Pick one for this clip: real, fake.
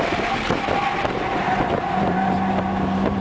real